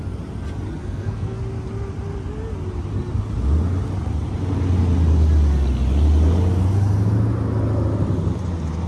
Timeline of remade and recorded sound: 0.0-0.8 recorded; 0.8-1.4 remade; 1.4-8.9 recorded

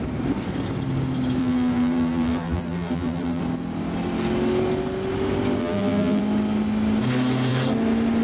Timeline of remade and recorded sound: 0.0-1.4 recorded; 1.4-3.4 remade; 3.4-5.6 recorded; 5.6-6.2 remade; 6.2-8.2 recorded

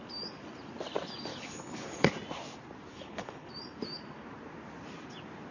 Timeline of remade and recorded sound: 0.0-1.3 recorded; 1.3-2.1 remade; 2.1-2.9 recorded; 2.9-3.5 remade; 3.5-5.5 recorded

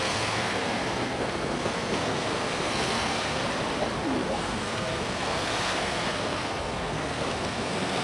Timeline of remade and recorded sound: 0.0-3.4 remade; 3.4-4.3 recorded; 4.3-8.0 remade

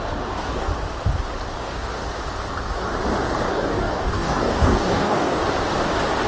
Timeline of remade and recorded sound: 0.0-0.7 remade; 0.7-1.6 recorded; 1.6-2.0 remade; 2.0-2.5 recorded; 2.5-2.9 remade; 2.9-3.5 recorded; 3.5-5.4 remade; 5.4-6.3 recorded